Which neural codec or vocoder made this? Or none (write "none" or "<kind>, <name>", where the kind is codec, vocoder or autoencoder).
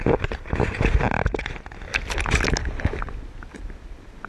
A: none